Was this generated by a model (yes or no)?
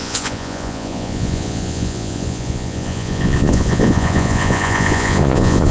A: yes